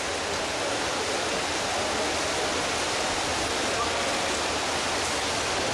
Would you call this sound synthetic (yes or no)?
no